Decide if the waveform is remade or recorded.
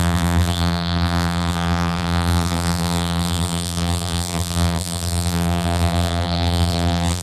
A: remade